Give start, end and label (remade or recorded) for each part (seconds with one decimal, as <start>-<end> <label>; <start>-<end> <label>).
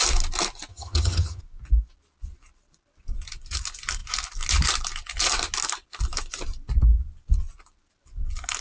0.0-0.7 recorded; 0.7-1.4 remade; 1.4-8.6 recorded